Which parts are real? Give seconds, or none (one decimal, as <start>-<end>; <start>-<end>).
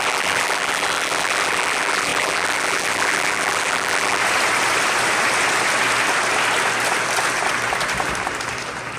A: 4.2-9.0